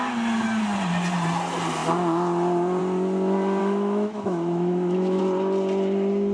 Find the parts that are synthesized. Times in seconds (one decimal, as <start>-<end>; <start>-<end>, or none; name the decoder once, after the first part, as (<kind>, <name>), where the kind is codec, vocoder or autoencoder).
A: 3.6-5.2 (autoencoder, DAC-VAE)